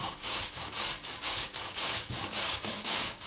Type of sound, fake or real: fake